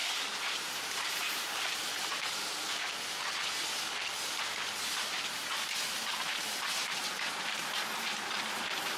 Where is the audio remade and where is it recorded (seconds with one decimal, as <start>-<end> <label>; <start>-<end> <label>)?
0.0-2.1 remade; 2.1-5.0 recorded; 5.0-9.0 remade